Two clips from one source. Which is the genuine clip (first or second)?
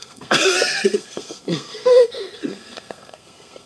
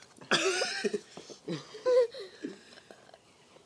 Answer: second